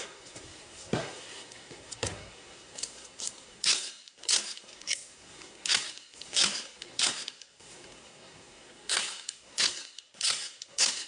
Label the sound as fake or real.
fake